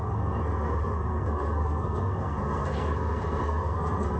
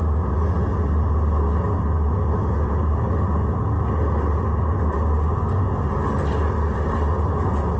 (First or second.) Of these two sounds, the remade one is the first